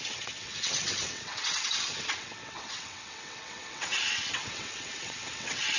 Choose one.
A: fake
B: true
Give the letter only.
A